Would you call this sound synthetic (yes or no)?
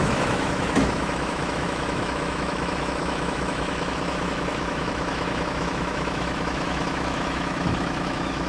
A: yes